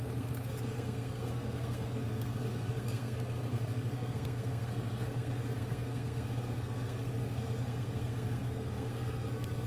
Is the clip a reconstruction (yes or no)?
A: yes